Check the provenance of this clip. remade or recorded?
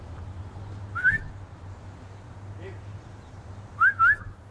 recorded